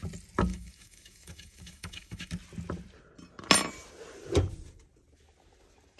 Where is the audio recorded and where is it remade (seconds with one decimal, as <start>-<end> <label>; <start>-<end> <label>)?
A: 0.0-0.5 recorded; 0.5-2.3 remade; 2.3-6.0 recorded